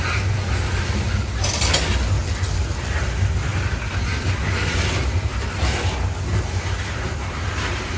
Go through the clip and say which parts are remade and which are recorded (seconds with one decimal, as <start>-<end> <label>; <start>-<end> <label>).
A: 0.0-2.2 recorded; 2.2-3.0 remade; 3.0-8.0 recorded